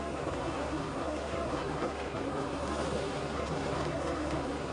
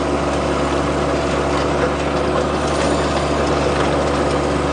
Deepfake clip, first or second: first